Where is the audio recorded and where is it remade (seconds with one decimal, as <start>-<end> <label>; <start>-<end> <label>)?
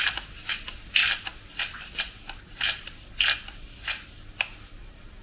0.0-5.2 recorded